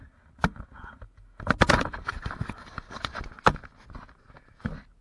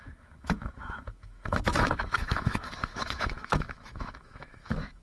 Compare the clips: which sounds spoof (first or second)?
second